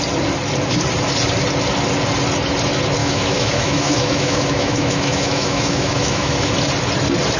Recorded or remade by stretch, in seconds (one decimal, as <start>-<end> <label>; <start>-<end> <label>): 0.0-3.0 recorded; 3.0-6.5 remade; 6.5-7.4 recorded